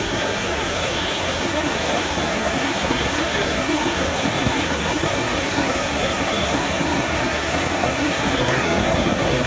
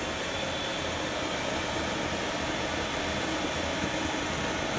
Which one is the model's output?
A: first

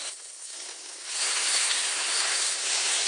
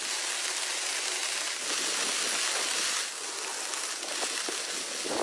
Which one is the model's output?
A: first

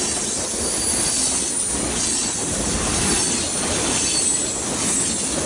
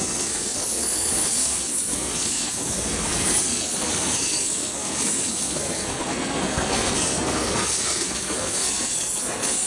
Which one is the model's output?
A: second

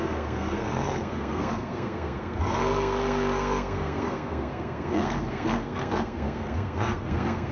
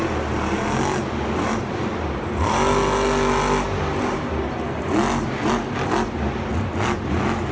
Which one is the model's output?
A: first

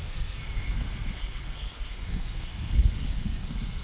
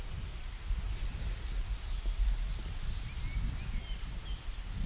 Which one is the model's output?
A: first